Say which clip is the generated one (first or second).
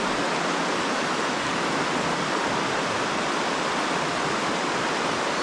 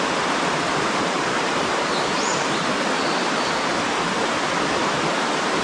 second